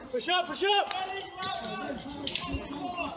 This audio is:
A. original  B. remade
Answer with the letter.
A